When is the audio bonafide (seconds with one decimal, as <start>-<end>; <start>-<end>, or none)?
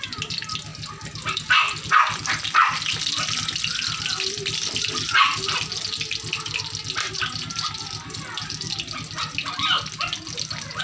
0.0-10.8